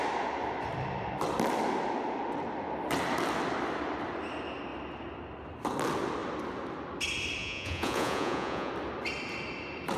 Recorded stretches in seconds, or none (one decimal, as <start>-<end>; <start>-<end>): 0.0-7.4; 8.7-10.0